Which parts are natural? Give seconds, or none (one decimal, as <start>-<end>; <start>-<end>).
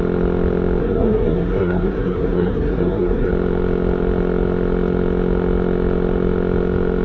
0.0-0.8; 3.3-7.0